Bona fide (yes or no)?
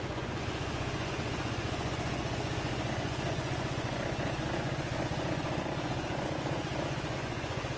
no